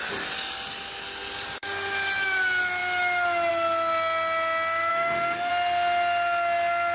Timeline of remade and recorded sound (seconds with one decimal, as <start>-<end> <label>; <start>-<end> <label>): 0.0-4.9 recorded; 4.9-5.5 remade; 5.5-6.9 recorded